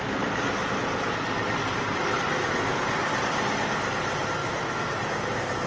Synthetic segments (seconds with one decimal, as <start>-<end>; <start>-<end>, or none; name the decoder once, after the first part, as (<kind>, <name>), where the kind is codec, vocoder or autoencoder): 4.4-4.9 (autoencoder, DAC-VAE)